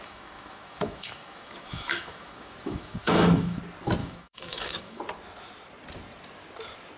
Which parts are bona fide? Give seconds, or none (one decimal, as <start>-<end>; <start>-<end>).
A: 3.6-4.0; 5.0-7.0